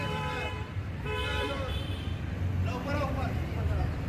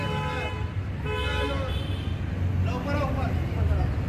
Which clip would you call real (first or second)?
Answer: second